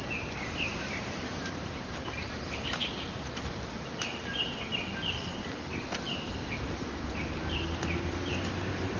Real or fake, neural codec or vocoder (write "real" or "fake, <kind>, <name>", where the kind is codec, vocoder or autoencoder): real